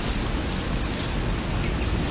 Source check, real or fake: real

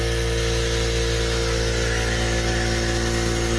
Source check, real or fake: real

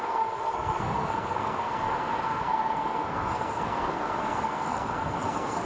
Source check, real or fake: fake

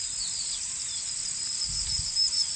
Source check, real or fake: real